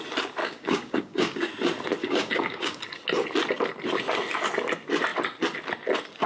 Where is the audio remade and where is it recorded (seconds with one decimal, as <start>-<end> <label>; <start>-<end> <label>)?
0.0-0.4 recorded; 0.4-1.5 remade; 1.5-2.0 recorded; 2.0-2.8 remade; 2.8-6.3 recorded